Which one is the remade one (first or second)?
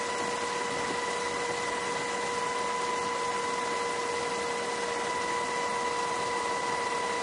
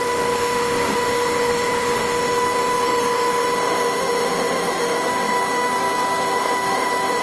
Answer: second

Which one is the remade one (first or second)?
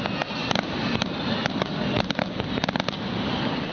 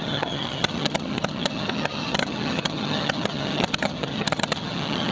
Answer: second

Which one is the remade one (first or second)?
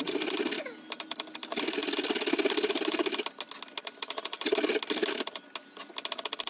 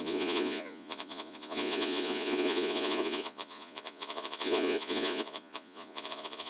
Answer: second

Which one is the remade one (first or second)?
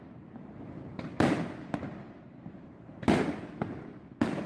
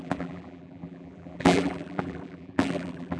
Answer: second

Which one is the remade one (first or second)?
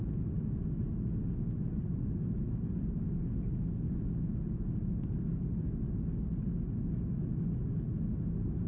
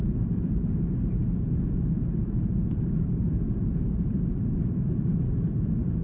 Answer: second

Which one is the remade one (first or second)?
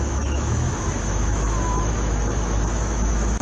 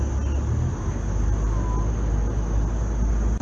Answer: first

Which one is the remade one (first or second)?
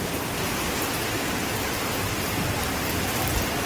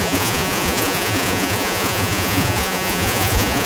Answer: second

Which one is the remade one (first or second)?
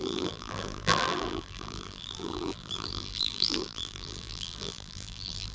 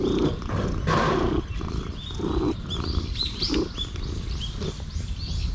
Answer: first